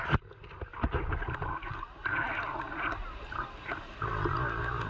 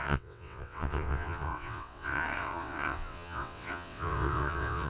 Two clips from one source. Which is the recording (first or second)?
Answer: first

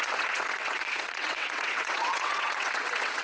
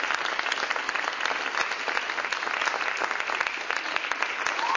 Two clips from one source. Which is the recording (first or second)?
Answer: second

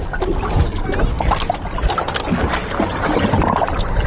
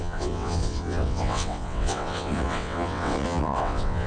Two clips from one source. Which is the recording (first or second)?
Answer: first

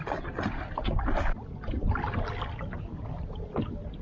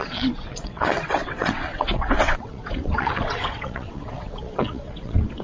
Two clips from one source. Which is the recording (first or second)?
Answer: first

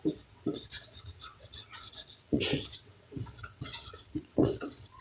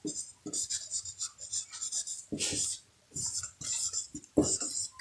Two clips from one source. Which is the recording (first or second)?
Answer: second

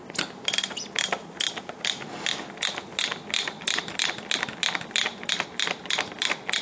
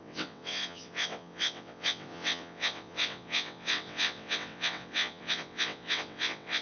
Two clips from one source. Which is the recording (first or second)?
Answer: first